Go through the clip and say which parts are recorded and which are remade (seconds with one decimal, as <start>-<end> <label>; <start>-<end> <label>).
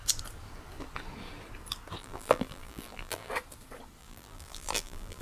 0.0-2.0 recorded; 2.0-3.3 remade; 3.3-4.0 recorded; 4.0-5.2 remade